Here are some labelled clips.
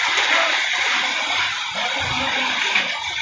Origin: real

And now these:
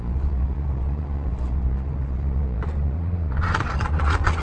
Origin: fake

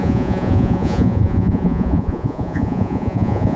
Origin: fake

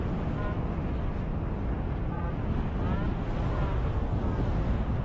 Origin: real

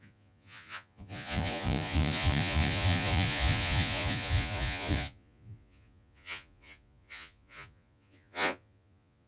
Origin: fake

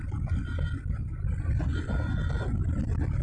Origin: real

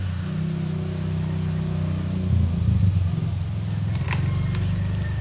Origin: real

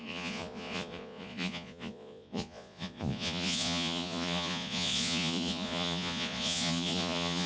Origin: fake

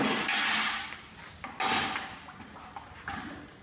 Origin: real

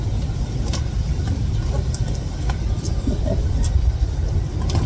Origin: real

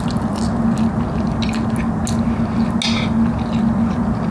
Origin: real